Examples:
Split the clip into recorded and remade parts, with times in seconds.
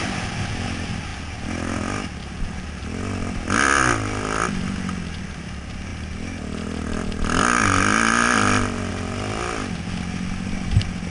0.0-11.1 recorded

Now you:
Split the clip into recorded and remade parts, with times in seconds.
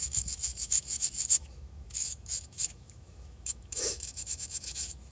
0.0-5.1 remade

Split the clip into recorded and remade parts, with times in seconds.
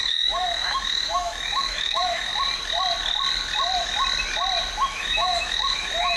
0.0-2.3 remade; 2.3-4.9 recorded; 4.9-6.2 remade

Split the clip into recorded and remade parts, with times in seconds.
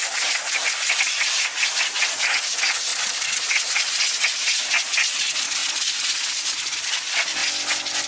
0.0-8.1 recorded